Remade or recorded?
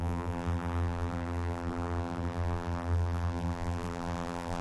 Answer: remade